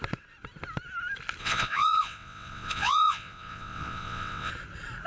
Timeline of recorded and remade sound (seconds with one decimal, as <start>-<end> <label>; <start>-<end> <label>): 0.0-1.4 recorded; 1.4-4.5 remade; 4.5-5.1 recorded